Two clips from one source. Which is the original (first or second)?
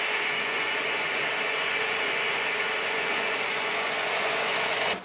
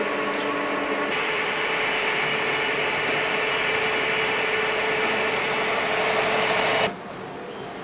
second